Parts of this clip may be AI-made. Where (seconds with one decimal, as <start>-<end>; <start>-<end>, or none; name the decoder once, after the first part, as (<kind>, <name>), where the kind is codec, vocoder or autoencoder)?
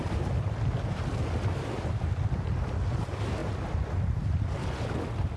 none